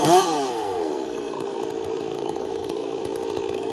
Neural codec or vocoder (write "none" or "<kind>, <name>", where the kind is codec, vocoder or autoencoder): codec, SNAC